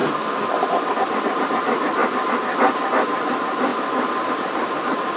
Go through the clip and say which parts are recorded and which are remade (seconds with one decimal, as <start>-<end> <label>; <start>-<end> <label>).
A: 0.0-1.4 recorded; 1.4-2.0 remade; 2.0-3.0 recorded; 3.0-3.7 remade; 3.7-4.3 recorded; 4.3-5.2 remade